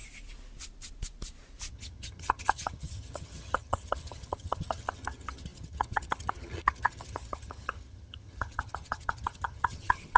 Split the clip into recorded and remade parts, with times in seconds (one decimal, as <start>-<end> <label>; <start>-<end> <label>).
0.0-1.7 recorded; 1.7-10.2 remade